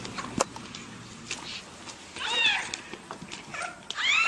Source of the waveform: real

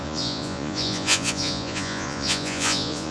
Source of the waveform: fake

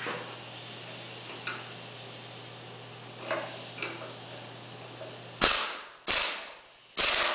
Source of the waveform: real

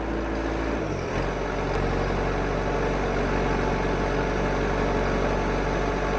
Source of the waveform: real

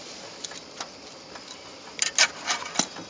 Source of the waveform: real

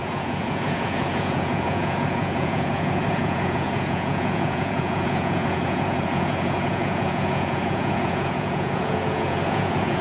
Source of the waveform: fake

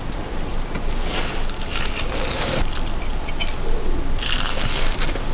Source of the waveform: real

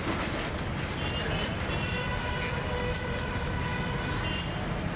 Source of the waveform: real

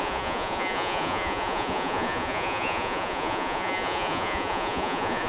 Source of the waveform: fake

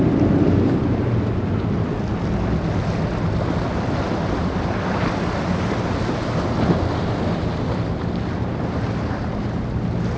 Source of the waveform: real